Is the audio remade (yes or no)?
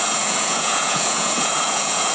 yes